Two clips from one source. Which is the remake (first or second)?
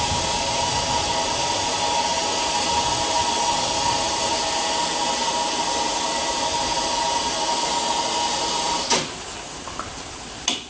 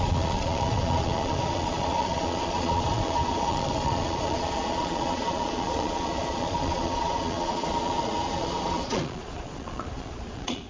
second